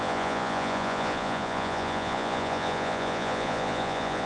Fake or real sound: fake